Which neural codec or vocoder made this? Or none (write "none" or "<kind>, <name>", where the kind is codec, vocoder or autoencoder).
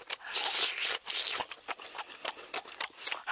none